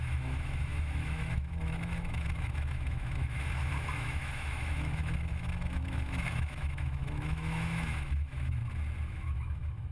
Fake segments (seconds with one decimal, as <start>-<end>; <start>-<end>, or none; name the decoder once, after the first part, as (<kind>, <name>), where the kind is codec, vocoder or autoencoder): 0.0-8.6 (autoencoder, DAC-VAE); 9.1-9.9